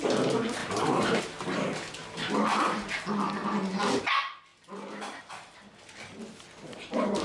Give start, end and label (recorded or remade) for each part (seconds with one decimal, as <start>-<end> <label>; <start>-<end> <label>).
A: 0.0-0.6 recorded; 0.6-1.2 remade; 1.2-2.0 recorded; 2.0-3.0 remade; 3.0-7.2 recorded